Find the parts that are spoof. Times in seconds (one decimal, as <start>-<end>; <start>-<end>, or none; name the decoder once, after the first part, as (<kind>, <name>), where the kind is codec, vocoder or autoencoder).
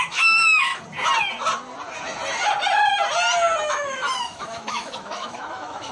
0.0-0.7 (autoencoder, DAC-VAE); 3.7-5.9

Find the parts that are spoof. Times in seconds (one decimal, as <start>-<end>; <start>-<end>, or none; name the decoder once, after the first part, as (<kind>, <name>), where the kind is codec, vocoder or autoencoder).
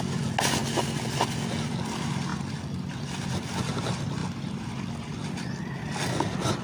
none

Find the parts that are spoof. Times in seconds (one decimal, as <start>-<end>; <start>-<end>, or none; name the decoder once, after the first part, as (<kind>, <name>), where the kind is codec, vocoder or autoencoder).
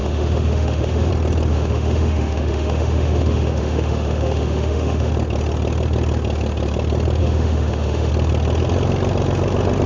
0.0-1.1 (autoencoder, DAC-VAE); 1.5-5.1; 7.2-8.1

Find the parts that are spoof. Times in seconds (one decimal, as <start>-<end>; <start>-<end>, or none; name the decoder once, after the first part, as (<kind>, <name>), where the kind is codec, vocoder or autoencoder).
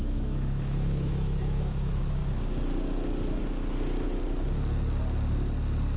0.0-2.2 (autoencoder, DAC-VAE)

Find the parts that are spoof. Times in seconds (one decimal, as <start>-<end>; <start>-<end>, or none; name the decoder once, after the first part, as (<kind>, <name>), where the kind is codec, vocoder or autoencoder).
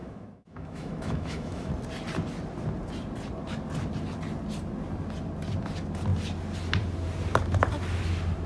0.0-1.7 (autoencoder, DAC-VAE)